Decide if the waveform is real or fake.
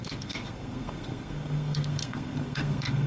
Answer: fake